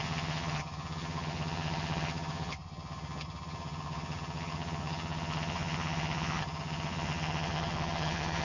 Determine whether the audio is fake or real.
fake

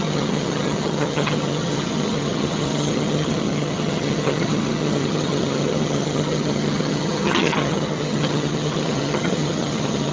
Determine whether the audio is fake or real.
fake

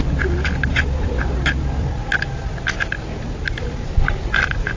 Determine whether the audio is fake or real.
real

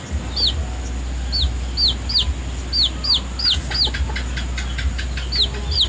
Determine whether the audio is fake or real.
real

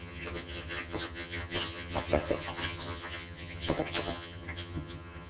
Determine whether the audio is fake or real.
fake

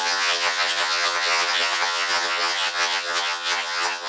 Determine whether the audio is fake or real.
fake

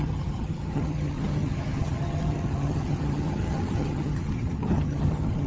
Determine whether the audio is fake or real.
fake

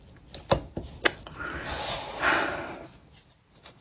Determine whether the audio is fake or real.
real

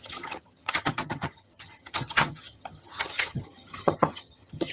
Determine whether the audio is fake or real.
fake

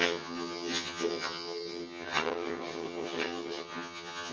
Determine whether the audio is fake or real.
fake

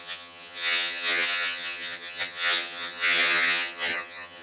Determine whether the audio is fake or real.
fake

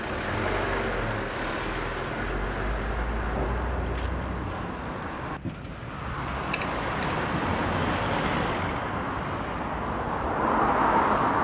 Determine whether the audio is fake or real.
real